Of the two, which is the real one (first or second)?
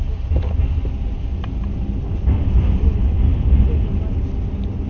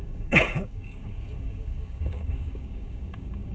first